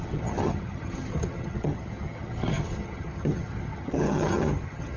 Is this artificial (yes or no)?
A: yes